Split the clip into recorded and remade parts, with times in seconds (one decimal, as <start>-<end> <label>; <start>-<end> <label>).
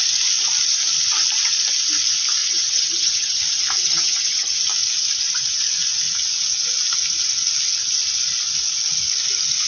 0.0-2.4 recorded; 2.4-3.4 remade; 3.4-3.8 recorded; 3.8-4.6 remade; 4.6-9.7 recorded